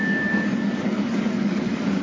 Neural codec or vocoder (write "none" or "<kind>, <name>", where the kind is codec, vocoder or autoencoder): codec, DAC